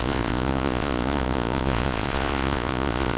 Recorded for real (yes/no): no